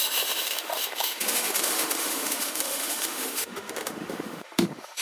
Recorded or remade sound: remade